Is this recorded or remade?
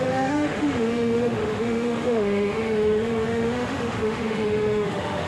remade